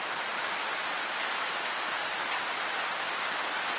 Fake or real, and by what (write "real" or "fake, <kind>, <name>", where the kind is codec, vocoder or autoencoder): real